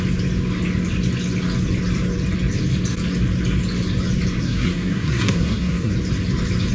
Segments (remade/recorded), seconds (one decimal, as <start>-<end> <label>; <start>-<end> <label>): 0.0-4.4 recorded; 4.4-5.9 remade; 5.9-6.7 recorded